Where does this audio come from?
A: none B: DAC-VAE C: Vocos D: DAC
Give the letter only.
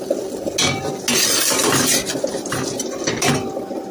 A